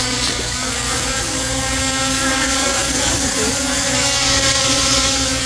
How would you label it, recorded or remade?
remade